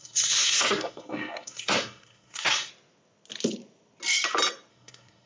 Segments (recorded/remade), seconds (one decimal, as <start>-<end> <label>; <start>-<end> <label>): 0.0-2.7 remade; 2.7-4.7 recorded; 4.7-5.3 remade